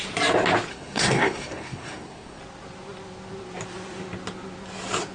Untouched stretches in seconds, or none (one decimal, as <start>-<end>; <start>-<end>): 0.0-0.7; 2.4-5.1